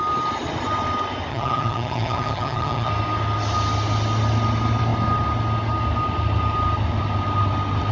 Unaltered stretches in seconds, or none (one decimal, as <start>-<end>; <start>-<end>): 0.0-1.3; 2.9-7.9